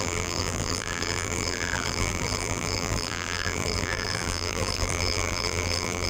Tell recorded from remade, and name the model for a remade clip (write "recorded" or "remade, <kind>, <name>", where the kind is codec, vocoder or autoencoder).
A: remade, vocoder, BigVGAN v2